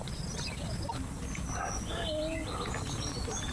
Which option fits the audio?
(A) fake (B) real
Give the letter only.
B